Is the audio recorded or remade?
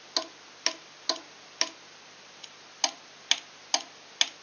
recorded